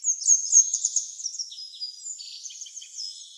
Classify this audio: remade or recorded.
recorded